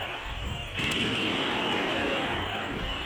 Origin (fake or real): fake